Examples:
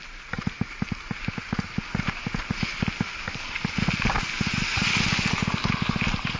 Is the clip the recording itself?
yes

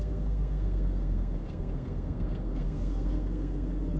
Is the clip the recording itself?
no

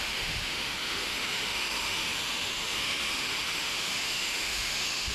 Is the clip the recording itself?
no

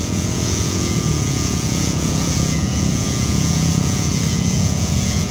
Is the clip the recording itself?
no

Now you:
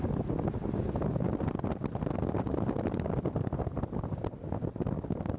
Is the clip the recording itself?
yes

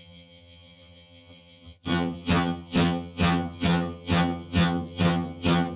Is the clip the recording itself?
no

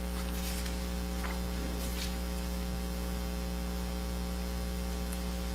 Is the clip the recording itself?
yes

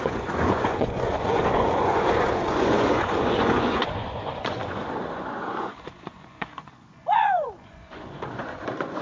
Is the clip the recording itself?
no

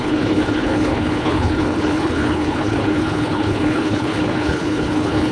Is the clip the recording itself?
no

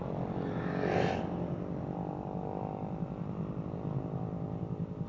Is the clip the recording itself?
yes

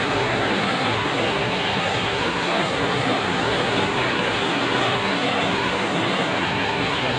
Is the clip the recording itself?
no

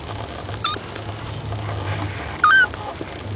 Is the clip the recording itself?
yes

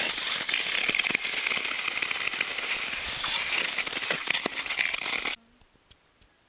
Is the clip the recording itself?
yes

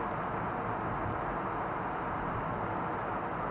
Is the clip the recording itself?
yes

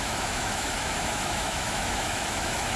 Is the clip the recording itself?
no